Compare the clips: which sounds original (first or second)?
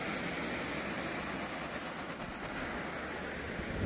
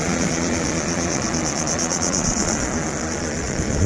first